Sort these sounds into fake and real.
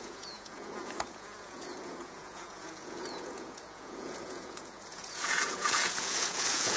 fake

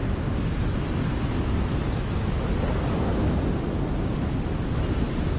real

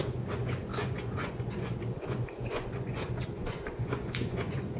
fake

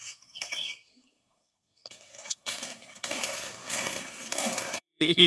fake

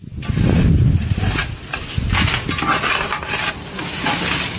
real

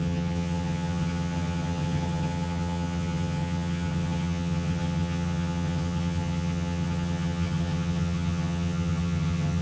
fake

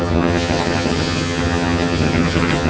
fake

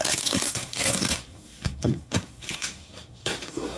fake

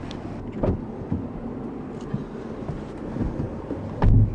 real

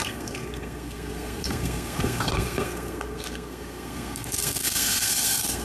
fake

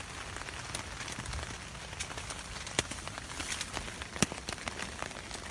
real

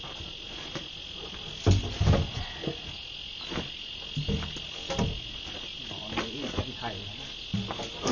real